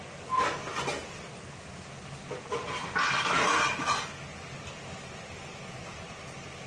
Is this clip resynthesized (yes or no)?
no